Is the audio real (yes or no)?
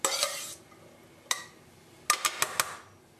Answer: yes